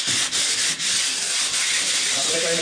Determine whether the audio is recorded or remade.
recorded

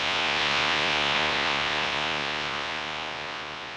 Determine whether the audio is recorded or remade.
remade